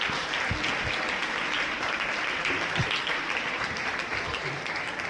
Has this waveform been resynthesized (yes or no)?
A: no